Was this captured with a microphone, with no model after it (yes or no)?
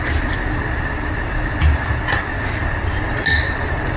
yes